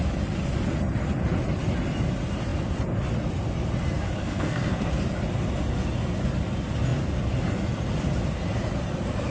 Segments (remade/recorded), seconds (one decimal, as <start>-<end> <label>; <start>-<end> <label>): 0.0-4.2 recorded; 4.2-4.9 remade; 4.9-9.3 recorded